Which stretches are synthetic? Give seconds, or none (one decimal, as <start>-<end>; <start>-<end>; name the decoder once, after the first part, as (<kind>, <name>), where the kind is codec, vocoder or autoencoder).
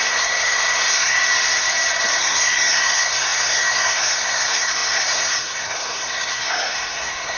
0.0-1.2 (codec, SNAC); 2.2-7.4